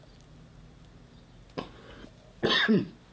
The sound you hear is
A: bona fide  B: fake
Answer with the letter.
A